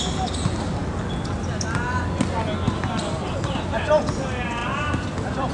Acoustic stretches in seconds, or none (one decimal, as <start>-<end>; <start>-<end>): 0.0-4.6